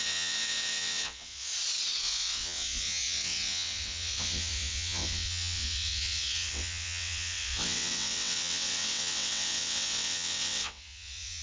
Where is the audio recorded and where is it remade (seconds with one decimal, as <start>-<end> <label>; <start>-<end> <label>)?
0.0-1.5 remade; 1.5-2.0 recorded; 2.0-11.4 remade